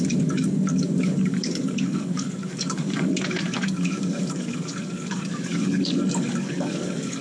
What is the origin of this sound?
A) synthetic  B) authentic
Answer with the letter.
A